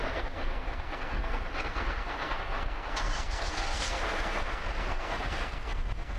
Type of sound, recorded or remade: remade